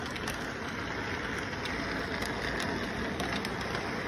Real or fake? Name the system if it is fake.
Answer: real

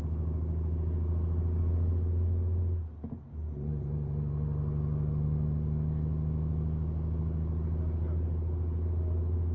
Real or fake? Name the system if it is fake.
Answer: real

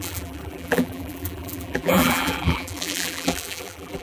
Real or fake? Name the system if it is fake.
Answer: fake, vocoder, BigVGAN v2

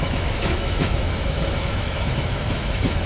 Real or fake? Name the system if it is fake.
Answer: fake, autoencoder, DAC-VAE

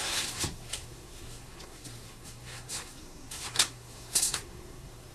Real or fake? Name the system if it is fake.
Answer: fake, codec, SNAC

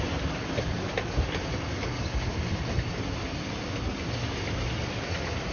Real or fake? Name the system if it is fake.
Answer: real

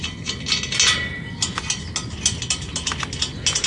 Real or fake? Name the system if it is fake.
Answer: real